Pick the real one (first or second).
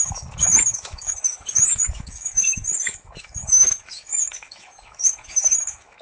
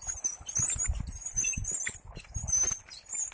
second